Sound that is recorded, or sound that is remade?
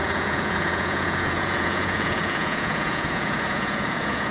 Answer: remade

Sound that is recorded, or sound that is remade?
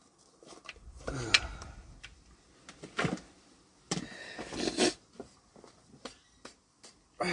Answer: recorded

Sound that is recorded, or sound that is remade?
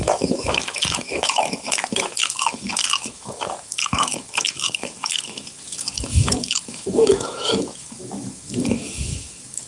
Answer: remade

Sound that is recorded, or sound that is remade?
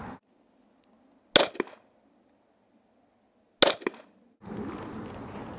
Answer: recorded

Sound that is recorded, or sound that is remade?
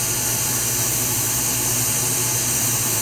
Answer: recorded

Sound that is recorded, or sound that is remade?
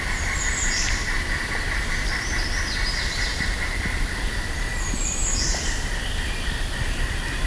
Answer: remade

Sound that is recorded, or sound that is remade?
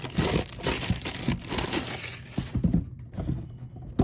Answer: recorded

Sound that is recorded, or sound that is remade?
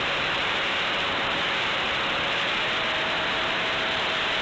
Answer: remade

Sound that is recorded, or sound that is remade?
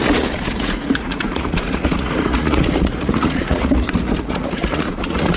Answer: remade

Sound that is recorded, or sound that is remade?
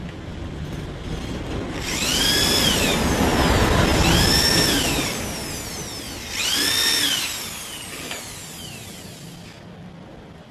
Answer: recorded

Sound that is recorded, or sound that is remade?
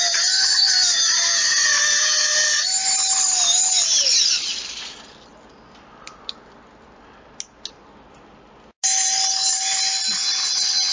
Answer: recorded